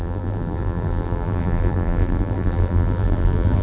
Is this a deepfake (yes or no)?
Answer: yes